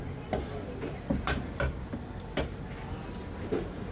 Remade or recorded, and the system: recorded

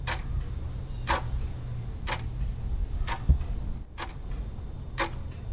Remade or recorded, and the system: recorded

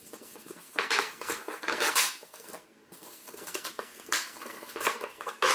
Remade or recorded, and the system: remade, codec, SNAC